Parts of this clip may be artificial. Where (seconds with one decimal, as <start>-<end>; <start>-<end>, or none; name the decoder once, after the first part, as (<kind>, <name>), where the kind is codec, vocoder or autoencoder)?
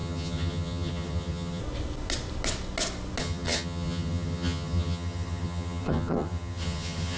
0.0-1.6 (vocoder, HiFi-GAN); 3.2-7.2